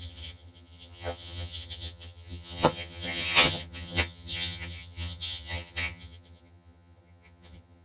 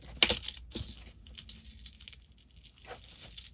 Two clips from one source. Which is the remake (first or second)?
first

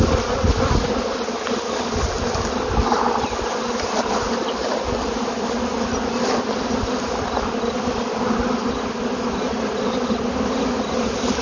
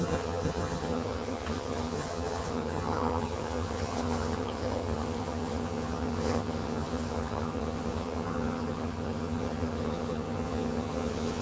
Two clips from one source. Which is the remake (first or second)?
second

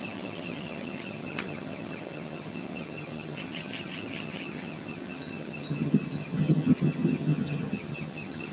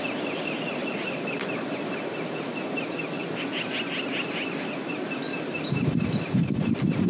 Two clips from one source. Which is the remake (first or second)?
first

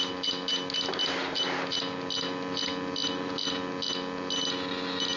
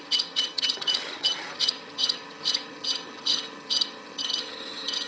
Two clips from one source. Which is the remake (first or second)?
second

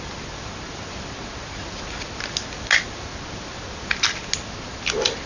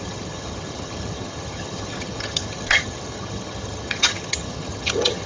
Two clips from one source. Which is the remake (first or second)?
second